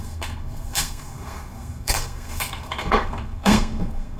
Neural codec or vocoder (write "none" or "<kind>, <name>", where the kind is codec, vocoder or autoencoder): codec, SNAC